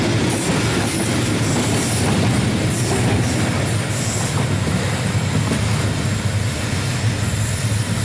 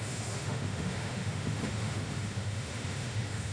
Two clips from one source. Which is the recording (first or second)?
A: first